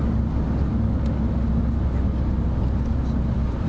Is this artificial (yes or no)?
no